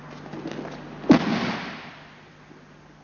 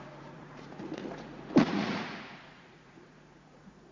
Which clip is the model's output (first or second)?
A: second